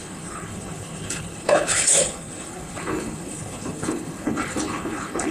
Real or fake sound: fake